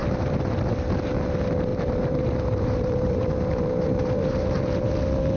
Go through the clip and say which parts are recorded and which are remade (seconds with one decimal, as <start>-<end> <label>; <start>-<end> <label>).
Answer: 0.0-1.7 recorded; 1.7-4.9 remade; 4.9-5.4 recorded

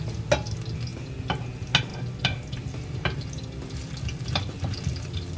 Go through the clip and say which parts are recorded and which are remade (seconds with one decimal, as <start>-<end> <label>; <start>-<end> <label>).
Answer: 0.0-1.9 recorded; 1.9-5.4 remade

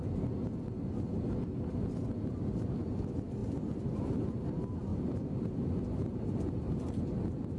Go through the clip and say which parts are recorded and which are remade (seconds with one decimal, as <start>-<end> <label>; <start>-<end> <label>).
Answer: 0.0-4.9 recorded; 4.9-5.5 remade; 5.5-7.6 recorded

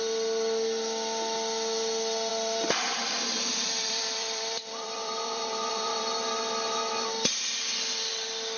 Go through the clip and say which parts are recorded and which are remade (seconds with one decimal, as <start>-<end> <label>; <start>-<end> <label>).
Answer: 0.0-2.3 recorded; 2.3-6.4 remade; 6.4-8.6 recorded

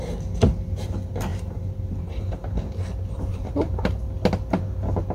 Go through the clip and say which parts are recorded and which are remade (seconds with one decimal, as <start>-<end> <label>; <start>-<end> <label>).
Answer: 0.0-1.3 recorded; 1.3-2.6 remade; 2.6-3.3 recorded; 3.3-4.0 remade; 4.0-5.1 recorded

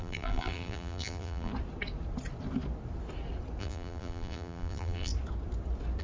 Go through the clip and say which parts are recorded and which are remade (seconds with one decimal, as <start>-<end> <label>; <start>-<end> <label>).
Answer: 0.0-1.5 remade; 1.5-3.6 recorded; 3.6-5.1 remade; 5.1-6.0 recorded